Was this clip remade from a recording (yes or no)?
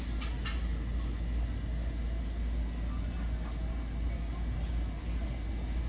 no